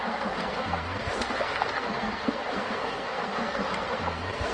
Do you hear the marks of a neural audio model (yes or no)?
yes